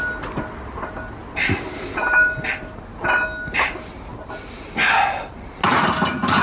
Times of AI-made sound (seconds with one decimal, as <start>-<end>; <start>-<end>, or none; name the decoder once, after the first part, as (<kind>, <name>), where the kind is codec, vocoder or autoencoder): none